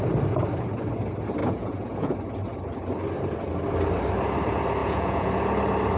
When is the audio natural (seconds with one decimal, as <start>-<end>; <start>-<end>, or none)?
0.0-1.4; 2.1-4.8; 5.3-6.0